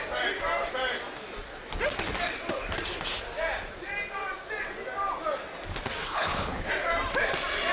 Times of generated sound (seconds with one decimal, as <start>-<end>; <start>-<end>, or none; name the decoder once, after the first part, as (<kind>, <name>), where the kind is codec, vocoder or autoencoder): 6.0-6.7 (codec, HILCodec)